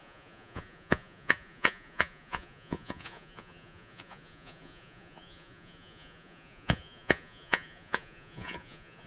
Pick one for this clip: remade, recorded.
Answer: remade